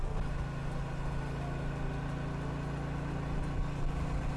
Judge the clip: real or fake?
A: real